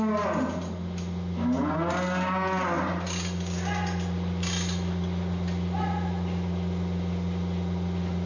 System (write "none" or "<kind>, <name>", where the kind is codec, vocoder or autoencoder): none